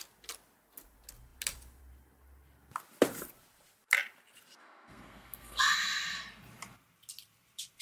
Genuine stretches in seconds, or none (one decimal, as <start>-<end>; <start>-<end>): 0.0-4.6; 5.6-7.8